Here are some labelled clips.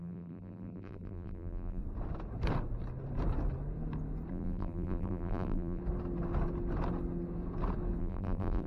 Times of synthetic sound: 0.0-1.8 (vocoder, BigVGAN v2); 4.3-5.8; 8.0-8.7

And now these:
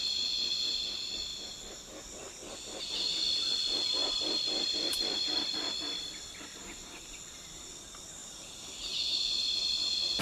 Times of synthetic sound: 4.0-7.7 (vocoder, BigVGAN v2); 8.2-10.2

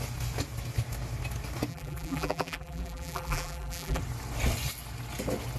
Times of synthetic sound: 1.7-4.0 (vocoder, BigVGAN v2)

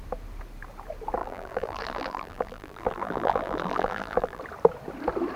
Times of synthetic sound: 1.2-4.4 (vocoder, BigVGAN v2)

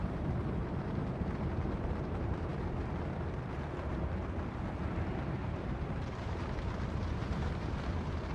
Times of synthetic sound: 0.0-2.5 (vocoder, BigVGAN v2); 5.1-8.3

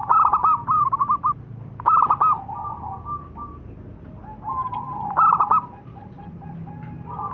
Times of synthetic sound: 5.9-6.7 (vocoder, BigVGAN v2)

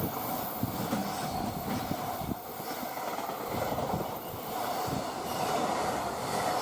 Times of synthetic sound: none